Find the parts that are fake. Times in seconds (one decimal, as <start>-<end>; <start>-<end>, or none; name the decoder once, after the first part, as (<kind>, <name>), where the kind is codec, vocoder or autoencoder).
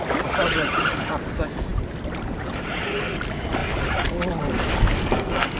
5.0-5.6 (codec, SNAC)